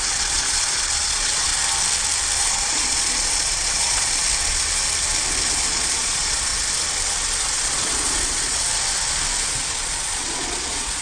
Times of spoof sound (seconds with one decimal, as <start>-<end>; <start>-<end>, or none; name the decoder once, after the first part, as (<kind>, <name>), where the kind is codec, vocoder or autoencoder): 0.0-1.5 (vocoder, Vocos); 2.4-4.2; 5.5-6.5; 7.4-8.7; 9.5-11.0

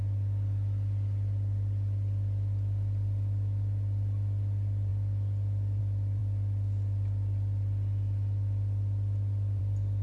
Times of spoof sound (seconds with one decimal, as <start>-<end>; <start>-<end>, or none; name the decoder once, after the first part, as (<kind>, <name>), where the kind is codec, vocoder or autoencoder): none

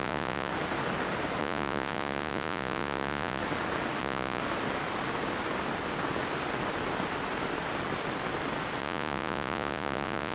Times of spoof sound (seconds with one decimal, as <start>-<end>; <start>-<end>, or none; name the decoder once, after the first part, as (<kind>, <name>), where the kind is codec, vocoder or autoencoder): 0.0-0.5 (vocoder, Vocos); 1.4-3.4; 4.0-4.4; 8.8-10.3